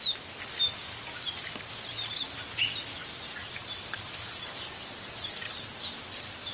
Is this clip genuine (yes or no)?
yes